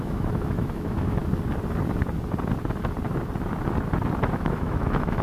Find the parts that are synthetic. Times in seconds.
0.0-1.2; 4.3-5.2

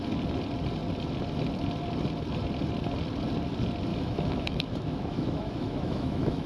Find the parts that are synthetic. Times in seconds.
3.9-6.5

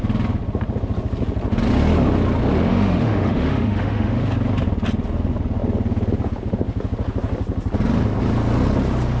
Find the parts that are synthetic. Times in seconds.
2.7-4.2

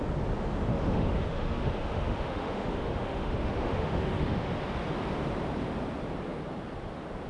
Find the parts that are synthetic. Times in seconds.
0.7-4.5

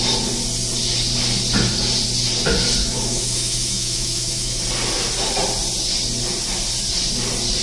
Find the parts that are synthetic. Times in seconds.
2.8-4.6